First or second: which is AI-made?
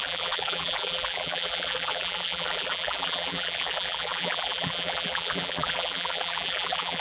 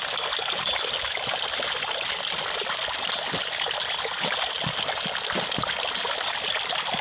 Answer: first